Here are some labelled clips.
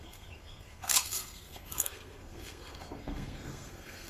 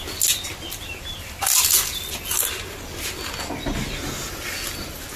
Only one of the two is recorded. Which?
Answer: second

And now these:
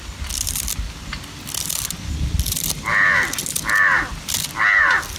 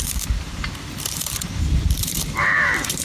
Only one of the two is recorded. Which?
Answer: first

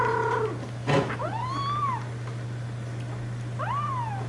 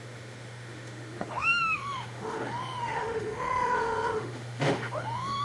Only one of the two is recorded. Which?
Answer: first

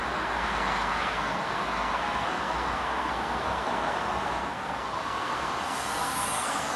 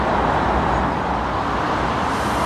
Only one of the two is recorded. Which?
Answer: second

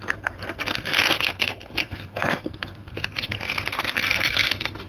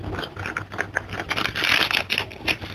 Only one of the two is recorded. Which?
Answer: second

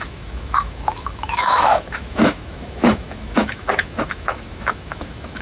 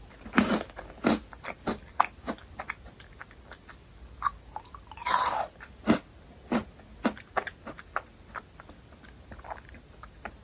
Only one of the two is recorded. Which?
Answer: second